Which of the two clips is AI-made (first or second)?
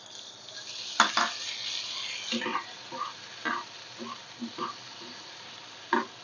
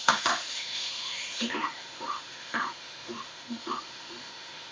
second